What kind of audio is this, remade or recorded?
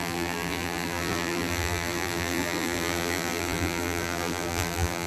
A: remade